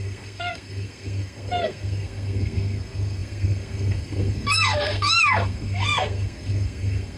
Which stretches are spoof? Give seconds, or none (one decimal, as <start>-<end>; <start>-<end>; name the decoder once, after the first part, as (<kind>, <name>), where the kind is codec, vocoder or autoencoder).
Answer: 0.0-7.2 (codec, SNAC)